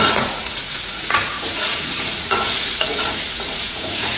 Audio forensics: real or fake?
fake